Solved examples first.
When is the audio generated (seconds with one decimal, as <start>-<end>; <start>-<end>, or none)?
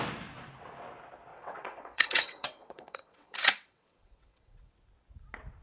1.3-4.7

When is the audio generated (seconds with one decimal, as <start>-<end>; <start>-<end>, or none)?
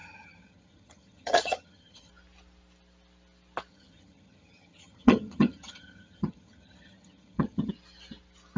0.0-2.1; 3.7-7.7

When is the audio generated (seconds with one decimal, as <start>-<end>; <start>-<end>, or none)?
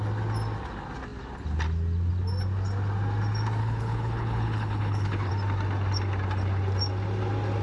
3.6-5.3